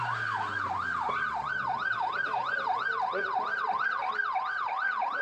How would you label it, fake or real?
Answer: real